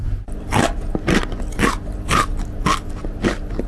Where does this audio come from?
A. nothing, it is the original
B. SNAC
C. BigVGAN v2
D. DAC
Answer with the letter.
A